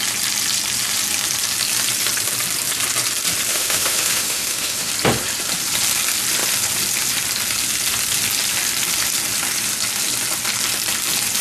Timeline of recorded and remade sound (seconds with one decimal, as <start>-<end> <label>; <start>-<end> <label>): 0.0-3.5 recorded; 3.5-4.9 remade; 4.9-11.4 recorded